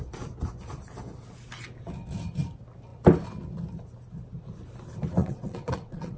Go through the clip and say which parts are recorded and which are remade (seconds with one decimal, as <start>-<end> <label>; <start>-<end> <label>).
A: 0.0-5.2 recorded; 5.2-6.2 remade